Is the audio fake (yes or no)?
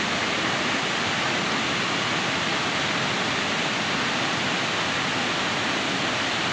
no